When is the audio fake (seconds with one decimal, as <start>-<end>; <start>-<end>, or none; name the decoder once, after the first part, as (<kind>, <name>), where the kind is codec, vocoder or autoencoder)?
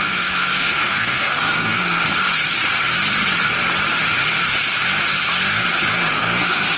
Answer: 0.0-2.0 (codec, SNAC); 6.1-6.8